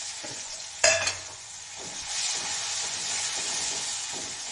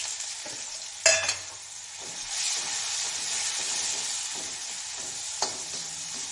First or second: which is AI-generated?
first